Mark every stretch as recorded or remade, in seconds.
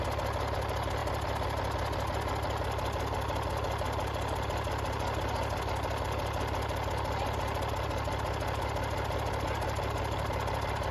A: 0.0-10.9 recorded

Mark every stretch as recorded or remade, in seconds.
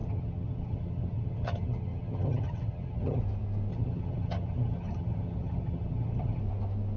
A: 0.0-3.2 remade; 3.2-3.7 recorded; 3.7-6.4 remade; 6.4-7.0 recorded